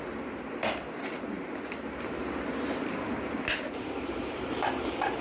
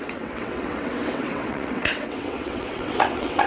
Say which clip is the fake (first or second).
second